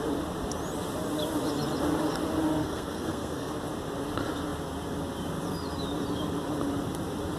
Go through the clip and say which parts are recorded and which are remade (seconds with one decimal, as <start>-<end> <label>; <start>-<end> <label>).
0.0-2.6 recorded; 2.6-3.5 remade; 3.5-7.4 recorded